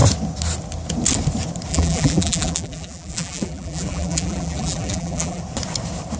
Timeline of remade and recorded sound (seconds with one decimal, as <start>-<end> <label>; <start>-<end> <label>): 0.0-1.7 recorded; 1.7-5.4 remade; 5.4-6.2 recorded